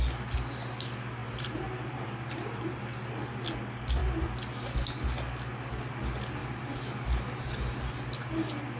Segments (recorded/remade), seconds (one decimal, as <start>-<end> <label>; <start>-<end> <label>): 0.0-1.2 recorded; 1.2-2.8 remade; 2.8-6.4 recorded; 6.4-7.9 remade; 7.9-8.8 recorded